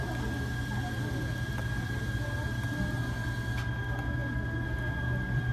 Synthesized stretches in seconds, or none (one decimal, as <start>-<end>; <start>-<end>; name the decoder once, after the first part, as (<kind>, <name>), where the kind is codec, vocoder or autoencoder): none